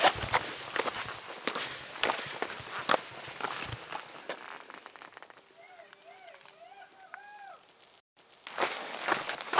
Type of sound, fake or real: real